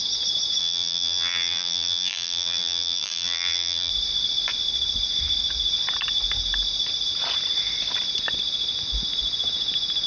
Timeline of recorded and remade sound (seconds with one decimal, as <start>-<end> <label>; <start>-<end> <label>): 0.0-0.6 recorded; 0.6-3.9 remade; 3.9-10.1 recorded